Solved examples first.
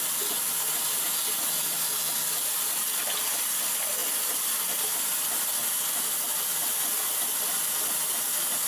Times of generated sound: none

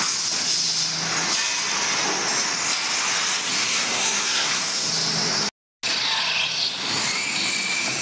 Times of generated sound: 3.6-4.9 (codec, SNAC)

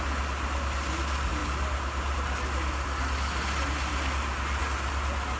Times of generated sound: none

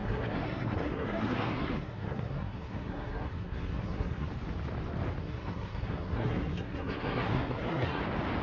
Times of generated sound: 0.0-4.3 (codec, SNAC); 5.2-8.0

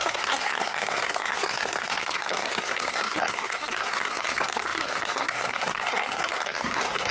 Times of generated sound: 0.0-7.1 (codec, SNAC)

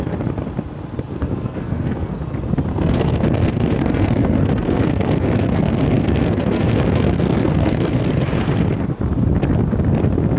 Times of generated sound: 1.1-2.2 (codec, SNAC); 2.7-7.9

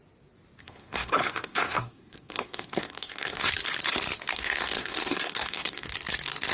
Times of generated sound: 0.6-3.5 (codec, SNAC); 4.3-5.9